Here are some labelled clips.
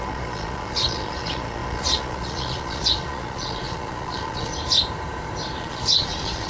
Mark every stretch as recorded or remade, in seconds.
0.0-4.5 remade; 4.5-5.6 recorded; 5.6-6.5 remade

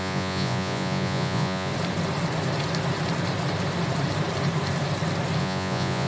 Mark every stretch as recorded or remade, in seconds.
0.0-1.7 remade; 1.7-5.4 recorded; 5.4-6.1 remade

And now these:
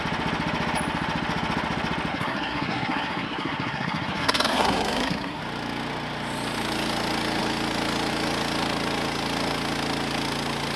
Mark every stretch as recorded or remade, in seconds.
0.0-2.1 recorded; 2.1-5.4 remade; 5.4-10.8 recorded

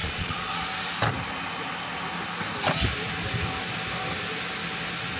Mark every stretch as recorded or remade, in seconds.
0.0-0.6 remade; 0.6-5.2 recorded

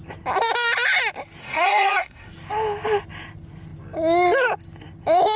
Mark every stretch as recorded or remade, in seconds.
0.0-1.4 recorded; 1.4-2.3 remade; 2.3-5.4 recorded

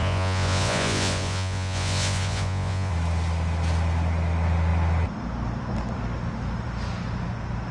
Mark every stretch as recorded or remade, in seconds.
0.0-2.9 remade; 2.9-7.7 recorded